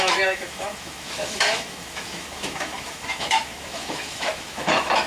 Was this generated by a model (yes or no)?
yes